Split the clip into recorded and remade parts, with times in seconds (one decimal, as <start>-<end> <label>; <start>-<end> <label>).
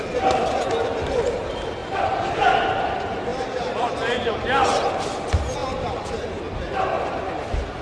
0.0-1.8 recorded; 1.8-2.8 remade; 2.8-3.3 recorded; 3.3-4.3 remade; 4.3-5.6 recorded; 5.6-6.4 remade; 6.4-7.8 recorded